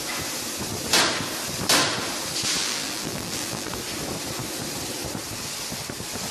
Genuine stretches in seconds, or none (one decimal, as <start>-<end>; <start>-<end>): 0.0-2.6; 3.7-6.3